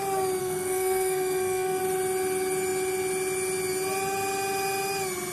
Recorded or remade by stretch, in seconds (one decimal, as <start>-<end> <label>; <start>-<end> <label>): 0.0-0.4 recorded; 0.4-1.8 remade; 1.8-5.3 recorded